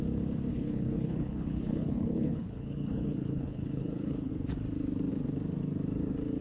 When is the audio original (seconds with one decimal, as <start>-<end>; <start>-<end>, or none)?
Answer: 0.0-0.5; 4.3-6.4